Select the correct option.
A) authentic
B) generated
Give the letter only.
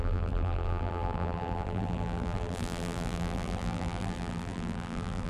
B